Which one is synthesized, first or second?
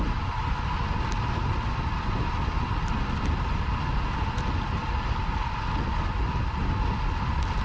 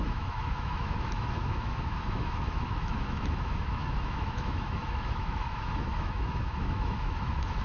second